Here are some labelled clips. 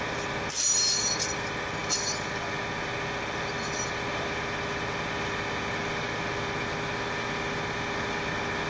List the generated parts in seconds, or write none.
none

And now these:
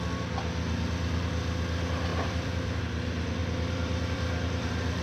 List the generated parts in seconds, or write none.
2.1-2.8; 3.4-5.0

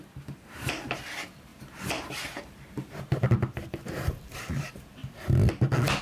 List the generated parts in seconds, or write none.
0.0-5.0

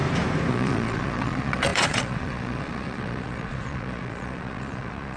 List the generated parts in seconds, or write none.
0.5-5.2